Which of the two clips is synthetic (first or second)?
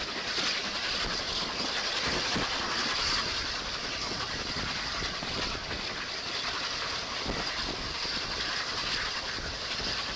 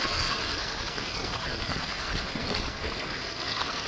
second